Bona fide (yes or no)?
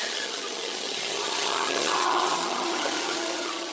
no